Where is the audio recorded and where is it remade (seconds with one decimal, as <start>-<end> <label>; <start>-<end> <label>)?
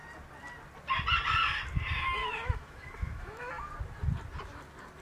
0.0-2.2 recorded; 2.2-3.5 remade; 3.5-5.0 recorded